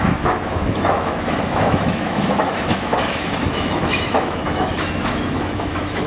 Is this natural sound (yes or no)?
no